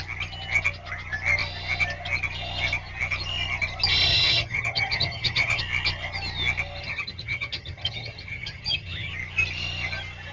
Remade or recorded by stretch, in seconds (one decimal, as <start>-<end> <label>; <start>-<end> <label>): 0.0-4.1 recorded; 4.1-5.6 remade; 5.6-6.8 recorded; 6.8-9.1 remade; 9.1-10.3 recorded